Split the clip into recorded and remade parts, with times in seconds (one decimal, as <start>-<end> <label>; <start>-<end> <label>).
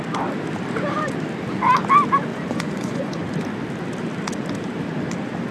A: 0.0-2.3 recorded; 2.3-3.2 remade; 3.2-5.5 recorded